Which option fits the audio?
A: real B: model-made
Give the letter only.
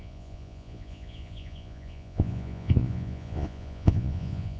B